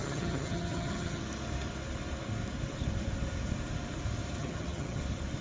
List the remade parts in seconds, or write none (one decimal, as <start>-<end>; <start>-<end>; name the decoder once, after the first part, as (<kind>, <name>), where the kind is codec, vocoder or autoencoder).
0.0-1.2 (vocoder, HiFi-GAN); 4.4-5.0